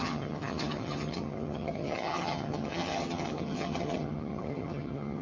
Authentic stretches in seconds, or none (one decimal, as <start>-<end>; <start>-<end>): none